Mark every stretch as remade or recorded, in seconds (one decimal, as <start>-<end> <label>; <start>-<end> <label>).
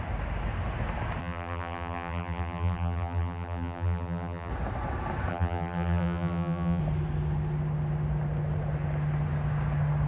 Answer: 0.0-1.2 recorded; 1.2-4.5 remade; 4.5-5.3 recorded; 5.3-6.8 remade; 6.8-10.1 recorded